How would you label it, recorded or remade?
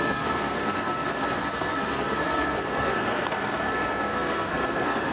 remade